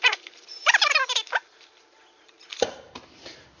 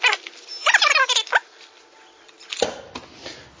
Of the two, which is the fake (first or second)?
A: first